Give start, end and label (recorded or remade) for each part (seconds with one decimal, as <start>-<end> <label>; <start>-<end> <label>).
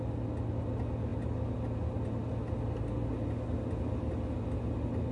0.0-5.1 recorded